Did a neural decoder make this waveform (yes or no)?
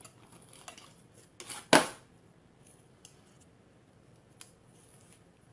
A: no